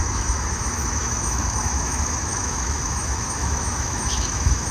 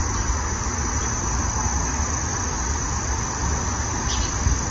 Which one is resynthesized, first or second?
first